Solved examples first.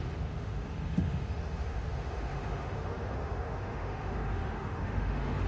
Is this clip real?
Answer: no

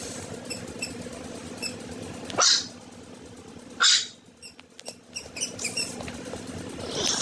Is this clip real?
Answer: yes